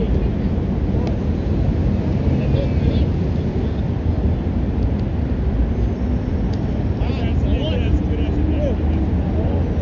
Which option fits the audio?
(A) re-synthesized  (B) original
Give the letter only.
B